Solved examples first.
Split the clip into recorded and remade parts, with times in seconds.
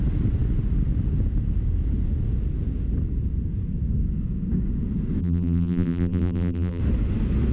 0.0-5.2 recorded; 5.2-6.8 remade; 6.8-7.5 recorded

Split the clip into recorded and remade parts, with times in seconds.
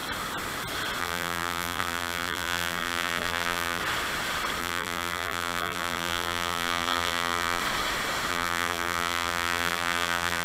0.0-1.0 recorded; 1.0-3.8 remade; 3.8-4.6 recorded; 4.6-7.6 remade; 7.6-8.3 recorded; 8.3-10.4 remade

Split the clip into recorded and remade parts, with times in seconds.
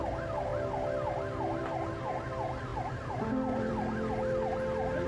0.0-2.7 recorded; 2.7-4.1 remade; 4.1-5.1 recorded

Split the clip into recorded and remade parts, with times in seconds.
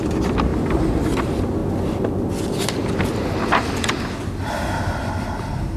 0.0-0.5 remade; 0.5-1.2 recorded; 1.2-1.6 remade; 1.6-5.1 recorded; 5.1-5.8 remade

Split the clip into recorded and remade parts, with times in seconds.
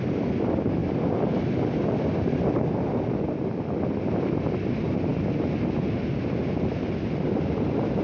0.0-8.0 recorded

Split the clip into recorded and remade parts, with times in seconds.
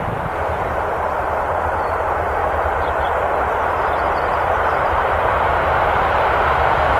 0.0-7.0 remade